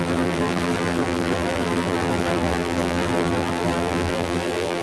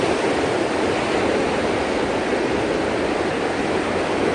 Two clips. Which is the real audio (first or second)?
second